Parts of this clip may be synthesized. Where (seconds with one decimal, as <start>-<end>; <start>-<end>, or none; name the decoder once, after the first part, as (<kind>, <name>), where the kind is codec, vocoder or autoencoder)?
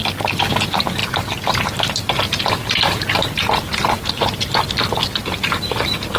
0.0-0.5 (vocoder, BigVGAN v2)